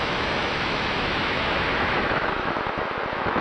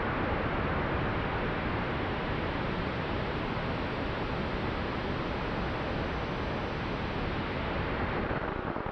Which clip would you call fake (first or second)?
first